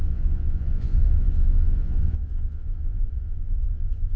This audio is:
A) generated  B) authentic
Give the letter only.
A